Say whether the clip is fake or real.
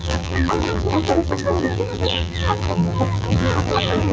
fake